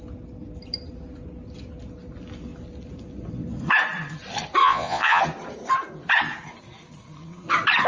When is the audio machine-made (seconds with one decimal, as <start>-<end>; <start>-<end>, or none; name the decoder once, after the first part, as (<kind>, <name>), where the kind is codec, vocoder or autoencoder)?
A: 4.6-5.2 (vocoder, Vocos)